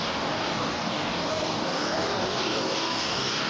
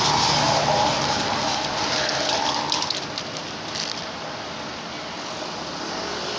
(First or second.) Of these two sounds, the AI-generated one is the first